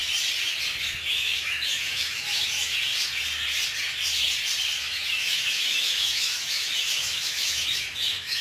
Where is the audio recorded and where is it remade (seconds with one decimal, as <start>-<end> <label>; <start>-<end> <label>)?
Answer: 0.0-1.1 recorded; 1.1-2.7 remade; 2.7-4.8 recorded; 4.8-8.4 remade